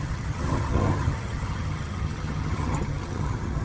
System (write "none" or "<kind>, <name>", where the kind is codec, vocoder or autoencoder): vocoder, HiFi-GAN